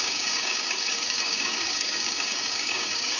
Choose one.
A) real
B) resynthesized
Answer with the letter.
B